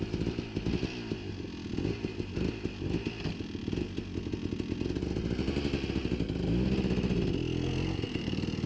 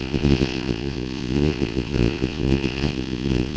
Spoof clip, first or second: second